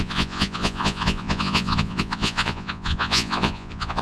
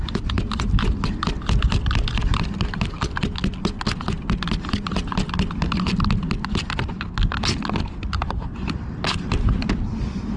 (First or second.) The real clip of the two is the second